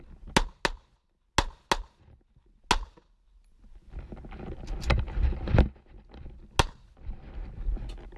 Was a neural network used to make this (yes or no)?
no